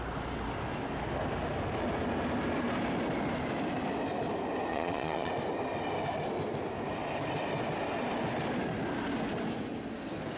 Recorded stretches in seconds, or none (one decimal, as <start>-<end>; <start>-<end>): 0.0-4.7; 5.3-10.4